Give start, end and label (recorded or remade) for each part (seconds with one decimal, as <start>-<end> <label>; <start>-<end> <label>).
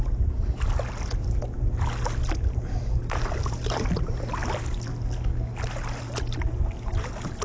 0.0-7.4 recorded